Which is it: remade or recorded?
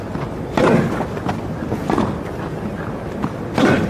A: recorded